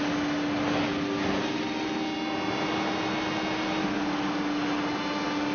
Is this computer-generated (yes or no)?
no